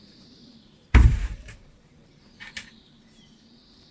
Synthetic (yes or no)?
yes